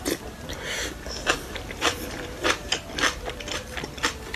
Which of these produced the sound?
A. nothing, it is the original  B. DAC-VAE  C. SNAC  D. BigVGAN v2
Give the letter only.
D